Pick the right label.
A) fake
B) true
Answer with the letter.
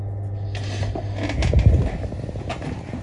B